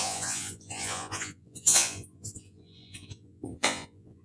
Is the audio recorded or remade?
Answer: remade